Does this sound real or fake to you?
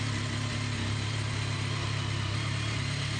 real